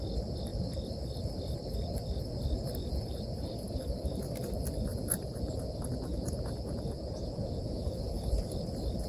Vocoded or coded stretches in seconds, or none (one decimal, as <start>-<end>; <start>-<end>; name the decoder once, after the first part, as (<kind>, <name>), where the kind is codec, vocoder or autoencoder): 2.8-3.8 (vocoder, Vocos); 4.9-8.5